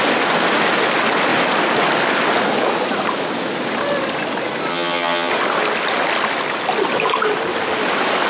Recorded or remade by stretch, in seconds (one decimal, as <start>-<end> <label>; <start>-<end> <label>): 0.0-4.7 recorded; 4.7-5.3 remade; 5.3-8.3 recorded